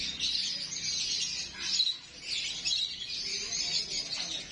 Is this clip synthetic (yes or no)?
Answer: no